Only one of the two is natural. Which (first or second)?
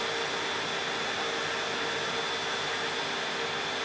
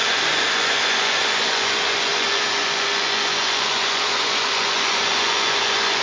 first